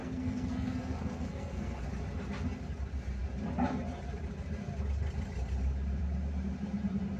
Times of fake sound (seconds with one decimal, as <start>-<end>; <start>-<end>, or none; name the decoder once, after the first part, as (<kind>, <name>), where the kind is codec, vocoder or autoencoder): 0.0-1.8 (codec, SNAC)